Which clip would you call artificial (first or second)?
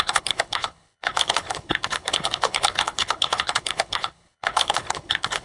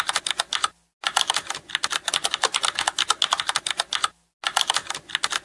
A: first